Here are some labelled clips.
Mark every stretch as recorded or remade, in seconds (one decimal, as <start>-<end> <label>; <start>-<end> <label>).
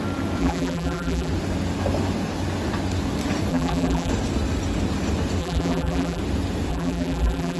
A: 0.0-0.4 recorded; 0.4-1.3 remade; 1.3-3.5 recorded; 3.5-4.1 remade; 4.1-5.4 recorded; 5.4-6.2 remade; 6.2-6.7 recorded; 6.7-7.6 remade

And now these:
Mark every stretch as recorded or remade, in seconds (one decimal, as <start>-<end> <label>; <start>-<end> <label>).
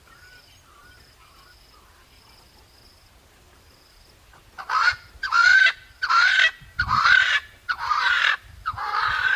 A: 0.0-9.4 recorded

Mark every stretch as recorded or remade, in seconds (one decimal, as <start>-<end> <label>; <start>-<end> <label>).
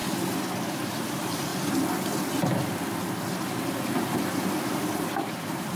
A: 0.0-0.7 recorded; 0.7-1.5 remade; 1.5-5.0 recorded; 5.0-5.8 remade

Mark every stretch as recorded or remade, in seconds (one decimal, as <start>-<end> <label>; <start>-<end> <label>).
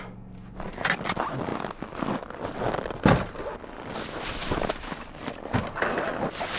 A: 0.0-6.6 recorded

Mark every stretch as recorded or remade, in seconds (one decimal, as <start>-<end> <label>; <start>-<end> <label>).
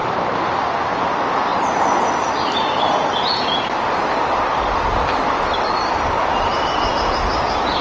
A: 0.0-0.7 remade; 0.7-7.8 recorded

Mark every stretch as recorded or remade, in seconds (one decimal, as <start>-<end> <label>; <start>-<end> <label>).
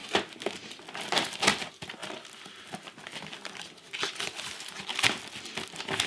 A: 0.0-2.0 recorded; 2.0-4.5 remade; 4.5-6.1 recorded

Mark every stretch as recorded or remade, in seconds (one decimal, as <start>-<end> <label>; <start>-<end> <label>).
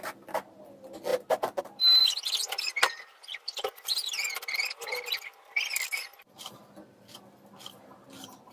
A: 0.0-2.0 recorded; 2.0-7.1 remade; 7.1-8.5 recorded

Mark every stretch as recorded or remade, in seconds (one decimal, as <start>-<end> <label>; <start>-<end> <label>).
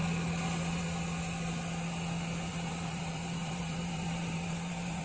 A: 0.0-2.5 recorded; 2.5-5.0 remade